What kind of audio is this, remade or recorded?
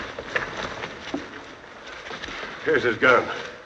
recorded